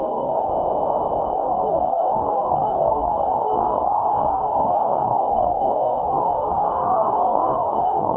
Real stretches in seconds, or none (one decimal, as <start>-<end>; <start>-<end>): 0.5-1.2